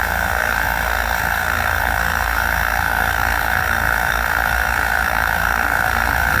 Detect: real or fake fake